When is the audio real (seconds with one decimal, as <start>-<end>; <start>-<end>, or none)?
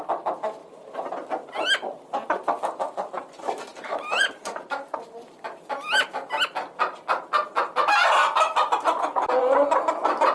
0.0-0.6; 1.1-3.7; 5.4-10.3